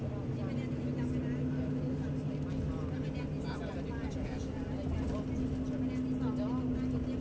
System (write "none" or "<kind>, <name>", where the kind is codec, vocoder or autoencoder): none